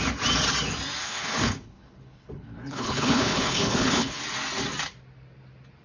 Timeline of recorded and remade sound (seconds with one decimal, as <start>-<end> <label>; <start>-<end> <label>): 0.0-1.0 recorded; 1.0-4.2 remade; 4.2-5.8 recorded